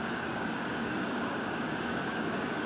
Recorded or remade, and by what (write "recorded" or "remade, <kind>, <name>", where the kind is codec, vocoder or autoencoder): remade, codec, DAC